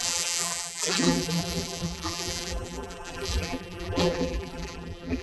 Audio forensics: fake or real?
fake